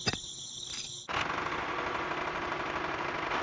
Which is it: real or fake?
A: real